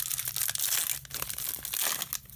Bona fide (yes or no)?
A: yes